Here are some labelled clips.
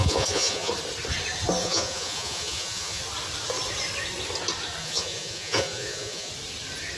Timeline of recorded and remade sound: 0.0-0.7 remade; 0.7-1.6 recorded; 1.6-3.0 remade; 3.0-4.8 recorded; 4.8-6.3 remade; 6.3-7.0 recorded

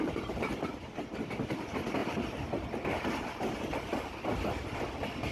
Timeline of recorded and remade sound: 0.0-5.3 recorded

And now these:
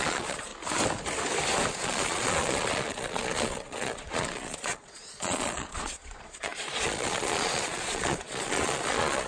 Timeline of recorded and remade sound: 0.0-0.5 remade; 0.5-1.7 recorded; 1.7-9.3 remade